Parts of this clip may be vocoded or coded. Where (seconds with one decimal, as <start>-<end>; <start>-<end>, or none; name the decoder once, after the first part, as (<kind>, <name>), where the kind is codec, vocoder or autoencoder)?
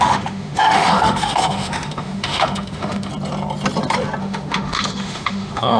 0.0-3.1 (autoencoder, DAC-VAE); 4.2-5.8